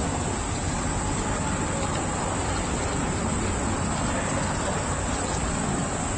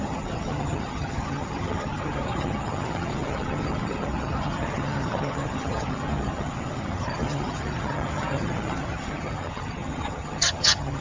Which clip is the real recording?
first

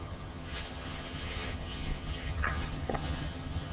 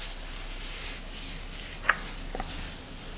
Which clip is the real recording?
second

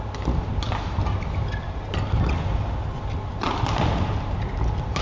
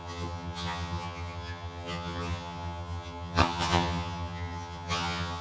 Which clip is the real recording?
first